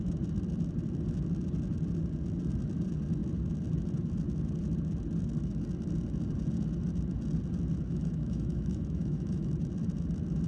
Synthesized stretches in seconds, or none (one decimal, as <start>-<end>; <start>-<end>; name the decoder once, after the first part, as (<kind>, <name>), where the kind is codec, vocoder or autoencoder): 7.9-9.5 (autoencoder, DAC-VAE)